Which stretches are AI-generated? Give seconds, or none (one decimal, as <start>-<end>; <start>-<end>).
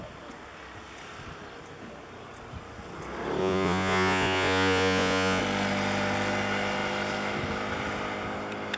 3.4-5.4